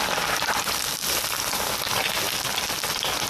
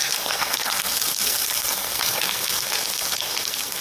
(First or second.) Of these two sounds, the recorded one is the first